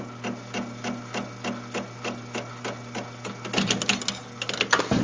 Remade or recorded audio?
recorded